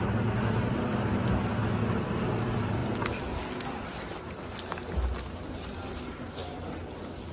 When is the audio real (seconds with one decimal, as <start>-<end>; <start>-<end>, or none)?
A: 0.0-7.3